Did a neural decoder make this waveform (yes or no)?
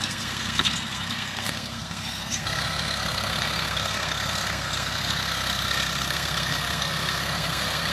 yes